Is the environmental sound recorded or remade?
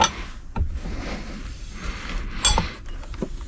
recorded